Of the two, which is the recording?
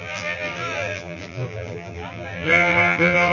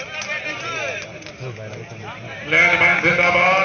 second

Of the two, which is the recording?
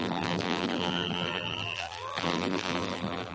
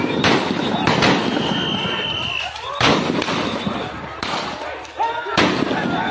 second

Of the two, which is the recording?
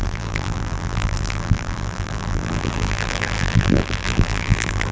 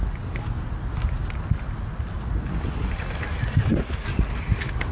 second